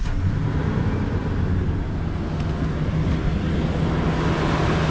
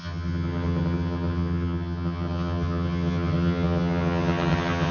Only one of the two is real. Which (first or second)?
first